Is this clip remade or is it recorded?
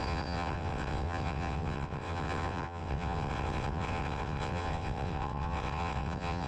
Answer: remade